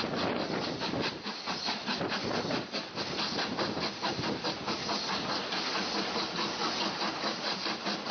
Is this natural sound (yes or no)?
yes